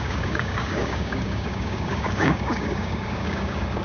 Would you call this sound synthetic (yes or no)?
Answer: yes